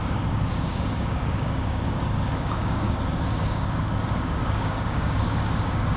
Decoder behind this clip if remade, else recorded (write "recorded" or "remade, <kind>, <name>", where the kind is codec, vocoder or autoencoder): remade, codec, DAC